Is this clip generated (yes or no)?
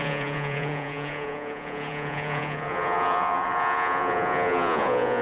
yes